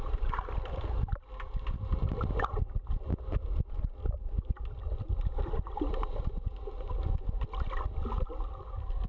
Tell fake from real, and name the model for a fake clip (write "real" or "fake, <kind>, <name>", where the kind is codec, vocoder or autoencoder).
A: real